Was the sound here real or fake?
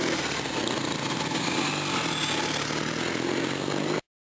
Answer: real